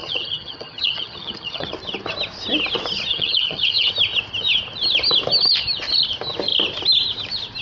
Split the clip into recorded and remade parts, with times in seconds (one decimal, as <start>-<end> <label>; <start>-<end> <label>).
0.0-1.7 remade; 1.7-3.1 recorded; 3.1-3.9 remade; 3.9-7.6 recorded